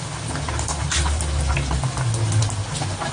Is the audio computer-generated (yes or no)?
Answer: no